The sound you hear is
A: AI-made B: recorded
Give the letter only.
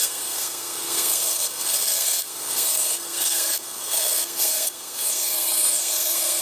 A